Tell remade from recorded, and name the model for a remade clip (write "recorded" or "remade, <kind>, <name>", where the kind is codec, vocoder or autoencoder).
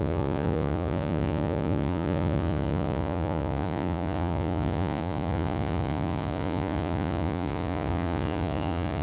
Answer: remade, vocoder, Vocos